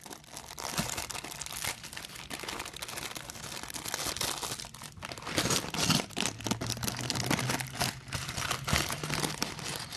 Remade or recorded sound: recorded